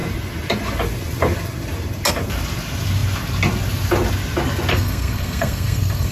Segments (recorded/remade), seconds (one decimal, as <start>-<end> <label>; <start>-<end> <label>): 0.0-4.7 recorded; 4.7-6.1 remade